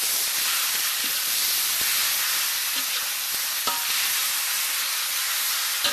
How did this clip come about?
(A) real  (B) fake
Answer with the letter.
A